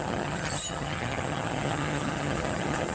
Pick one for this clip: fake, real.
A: fake